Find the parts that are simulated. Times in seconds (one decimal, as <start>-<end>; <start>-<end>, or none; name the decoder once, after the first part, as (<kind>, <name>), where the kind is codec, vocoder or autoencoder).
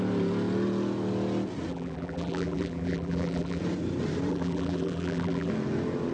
1.7-3.6 (vocoder, BigVGAN v2); 4.3-5.5